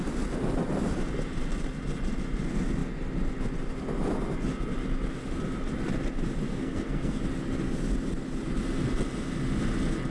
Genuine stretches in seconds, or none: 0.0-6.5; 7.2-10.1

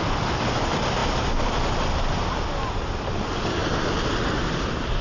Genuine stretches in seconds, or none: 0.0-5.0

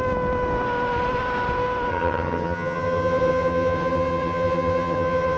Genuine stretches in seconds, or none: 0.0-1.9

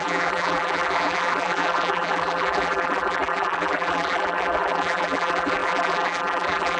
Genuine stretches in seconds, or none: none

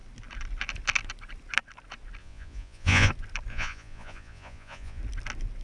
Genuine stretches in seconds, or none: 0.0-2.2; 3.1-3.5; 5.0-5.6